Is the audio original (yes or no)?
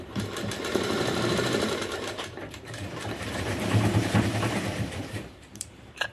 no